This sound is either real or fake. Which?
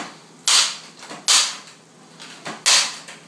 real